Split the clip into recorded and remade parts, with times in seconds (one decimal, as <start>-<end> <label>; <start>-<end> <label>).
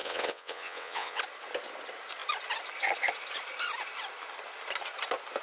0.0-1.2 remade; 1.2-5.4 recorded